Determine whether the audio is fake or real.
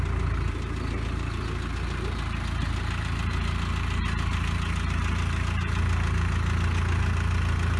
real